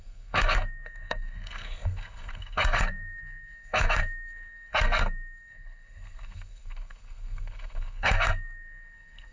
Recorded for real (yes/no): no